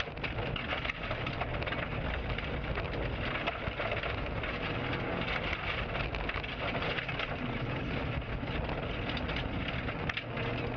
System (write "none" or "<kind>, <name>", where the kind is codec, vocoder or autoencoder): none